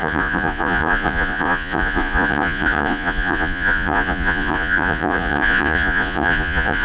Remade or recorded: remade